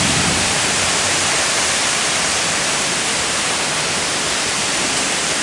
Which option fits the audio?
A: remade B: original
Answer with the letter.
A